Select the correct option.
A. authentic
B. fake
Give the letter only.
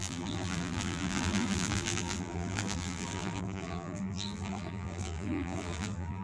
B